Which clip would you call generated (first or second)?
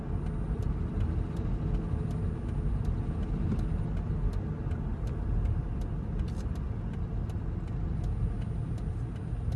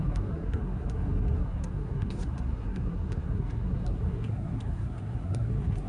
second